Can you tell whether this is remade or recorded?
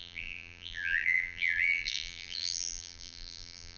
remade